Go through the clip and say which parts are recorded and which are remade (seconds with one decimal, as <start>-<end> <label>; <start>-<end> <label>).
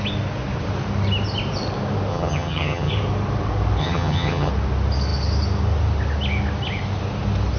0.0-2.1 recorded; 2.1-2.9 remade; 2.9-3.8 recorded; 3.8-4.5 remade; 4.5-7.6 recorded